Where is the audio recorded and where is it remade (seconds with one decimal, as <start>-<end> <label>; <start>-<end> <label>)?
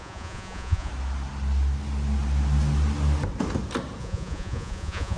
0.0-0.9 remade; 0.9-4.0 recorded; 4.0-5.2 remade